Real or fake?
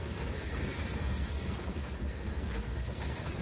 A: fake